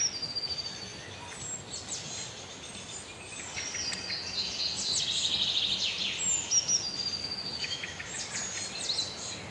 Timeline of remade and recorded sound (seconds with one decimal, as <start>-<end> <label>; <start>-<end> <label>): 0.0-7.2 recorded; 7.2-8.1 remade; 8.1-9.5 recorded

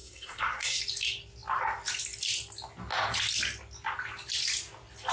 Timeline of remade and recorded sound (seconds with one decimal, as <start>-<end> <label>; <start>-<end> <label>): 0.0-0.8 remade; 0.8-5.1 recorded

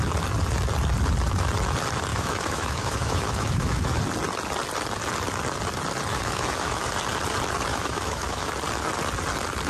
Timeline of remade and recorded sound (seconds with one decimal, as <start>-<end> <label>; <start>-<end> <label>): 0.0-2.1 recorded; 2.1-4.0 remade; 4.0-6.1 recorded; 6.1-6.9 remade; 6.9-7.7 recorded; 7.7-8.5 remade; 8.5-9.7 recorded

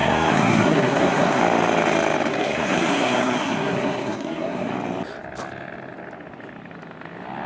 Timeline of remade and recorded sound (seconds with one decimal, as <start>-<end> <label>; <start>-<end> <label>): 0.0-1.4 remade; 1.4-2.3 recorded; 2.3-4.7 remade; 4.7-7.5 recorded

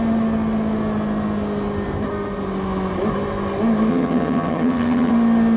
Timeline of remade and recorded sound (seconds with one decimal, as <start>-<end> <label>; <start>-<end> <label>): 0.0-3.9 recorded; 3.9-5.1 remade; 5.1-5.6 recorded

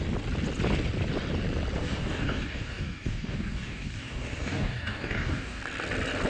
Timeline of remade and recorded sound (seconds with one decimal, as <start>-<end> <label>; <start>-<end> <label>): 0.0-1.8 recorded; 1.8-5.6 remade; 5.6-6.3 recorded

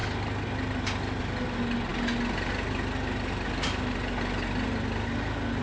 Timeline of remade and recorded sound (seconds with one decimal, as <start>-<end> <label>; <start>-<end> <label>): 0.0-5.6 recorded

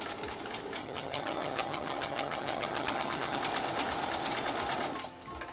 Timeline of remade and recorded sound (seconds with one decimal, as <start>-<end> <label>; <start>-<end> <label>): 0.0-0.8 recorded; 0.8-3.4 remade; 3.4-5.5 recorded